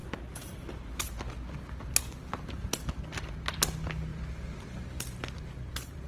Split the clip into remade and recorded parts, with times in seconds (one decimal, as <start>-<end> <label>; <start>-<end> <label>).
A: 0.0-4.1 recorded; 4.1-6.1 remade